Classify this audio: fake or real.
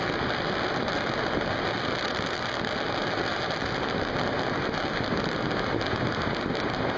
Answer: real